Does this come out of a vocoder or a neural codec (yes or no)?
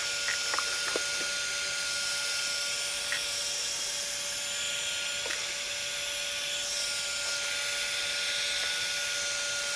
no